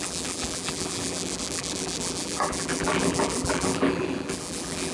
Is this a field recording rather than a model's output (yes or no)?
no